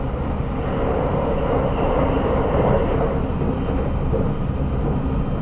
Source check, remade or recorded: recorded